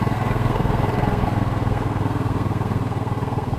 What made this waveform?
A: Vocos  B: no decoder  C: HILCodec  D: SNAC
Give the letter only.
D